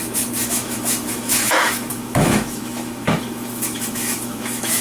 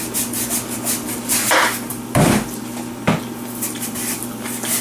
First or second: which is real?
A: second